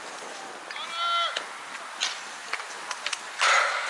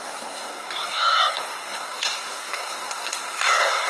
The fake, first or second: second